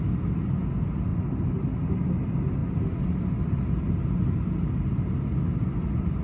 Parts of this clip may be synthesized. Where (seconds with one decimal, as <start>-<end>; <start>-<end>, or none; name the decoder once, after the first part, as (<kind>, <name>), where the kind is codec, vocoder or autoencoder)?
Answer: none